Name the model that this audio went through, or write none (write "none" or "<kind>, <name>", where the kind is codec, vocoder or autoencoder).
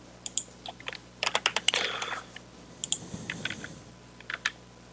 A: none